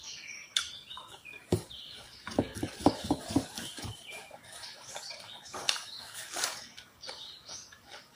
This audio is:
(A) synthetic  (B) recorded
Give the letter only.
A